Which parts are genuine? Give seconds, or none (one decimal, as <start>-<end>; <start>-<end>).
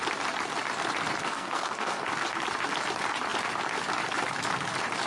0.0-1.2; 2.1-5.1